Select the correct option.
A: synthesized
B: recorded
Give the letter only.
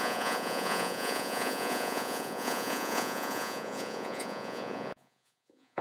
A